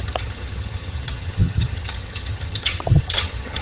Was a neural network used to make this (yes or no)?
yes